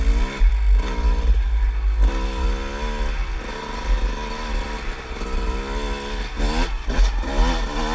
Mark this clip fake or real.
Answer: real